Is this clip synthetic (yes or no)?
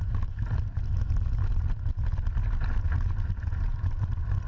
no